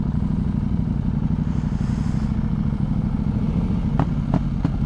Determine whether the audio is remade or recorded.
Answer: recorded